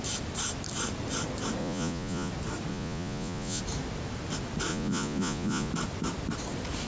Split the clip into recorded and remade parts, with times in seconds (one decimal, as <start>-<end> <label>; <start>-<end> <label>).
0.0-1.6 recorded; 1.6-2.3 remade; 2.3-2.7 recorded; 2.7-3.6 remade; 3.6-4.7 recorded; 4.7-5.7 remade; 5.7-6.9 recorded